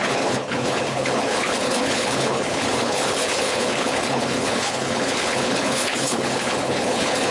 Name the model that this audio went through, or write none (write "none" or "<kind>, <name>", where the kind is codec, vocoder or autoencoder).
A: codec, HILCodec